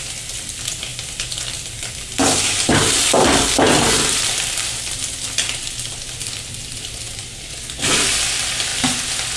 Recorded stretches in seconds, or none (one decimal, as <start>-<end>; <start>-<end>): 0.0-9.4